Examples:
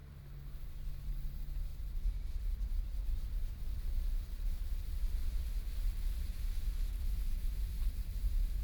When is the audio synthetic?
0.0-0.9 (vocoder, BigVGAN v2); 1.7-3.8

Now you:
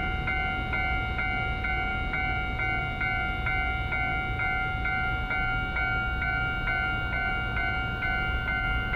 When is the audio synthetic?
none

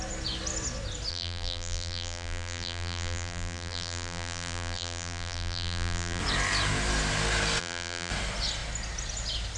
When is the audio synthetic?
1.1-6.2 (vocoder, BigVGAN v2); 7.6-8.1

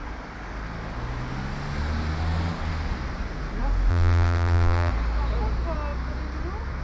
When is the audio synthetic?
3.9-4.9 (vocoder, BigVGAN v2)

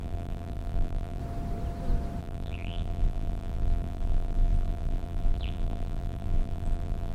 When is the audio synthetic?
0.0-1.2 (vocoder, BigVGAN v2); 2.2-7.1

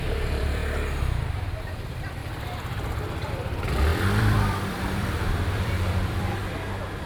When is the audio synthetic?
0.0-0.6 (vocoder, BigVGAN v2); 1.7-2.2; 3.3-6.4

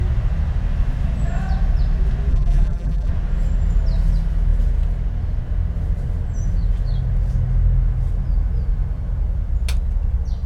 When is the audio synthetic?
2.3-3.1 (vocoder, BigVGAN v2)